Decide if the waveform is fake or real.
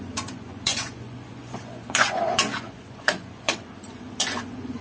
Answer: fake